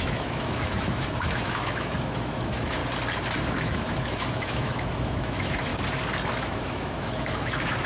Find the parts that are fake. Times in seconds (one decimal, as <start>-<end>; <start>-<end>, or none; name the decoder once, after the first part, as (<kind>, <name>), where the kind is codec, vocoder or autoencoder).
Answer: 0.0-2.8 (autoencoder, DAC-VAE); 3.5-5.7; 6.3-7.9